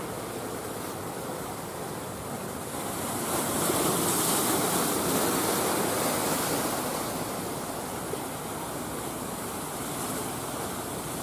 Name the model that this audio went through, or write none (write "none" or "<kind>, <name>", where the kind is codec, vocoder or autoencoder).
none